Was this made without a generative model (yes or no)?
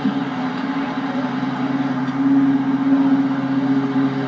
yes